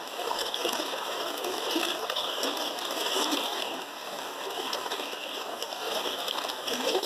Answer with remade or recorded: remade